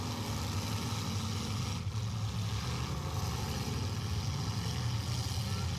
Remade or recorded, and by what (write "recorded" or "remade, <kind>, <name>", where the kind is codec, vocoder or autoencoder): recorded